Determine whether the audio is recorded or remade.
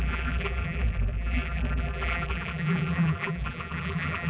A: remade